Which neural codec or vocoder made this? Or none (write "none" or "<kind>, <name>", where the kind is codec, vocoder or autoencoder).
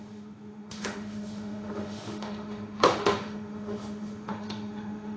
autoencoder, DAC-VAE